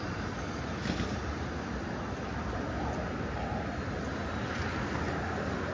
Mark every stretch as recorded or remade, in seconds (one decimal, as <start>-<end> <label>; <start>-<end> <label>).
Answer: 0.0-5.7 recorded